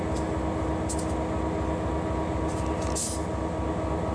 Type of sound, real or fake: real